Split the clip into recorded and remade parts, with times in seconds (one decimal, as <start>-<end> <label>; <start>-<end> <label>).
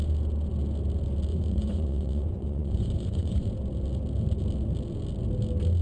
0.0-1.3 recorded; 1.3-3.5 remade; 3.5-5.8 recorded